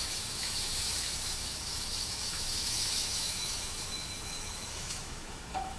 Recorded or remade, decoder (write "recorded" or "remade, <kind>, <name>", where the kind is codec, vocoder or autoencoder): remade, autoencoder, DAC-VAE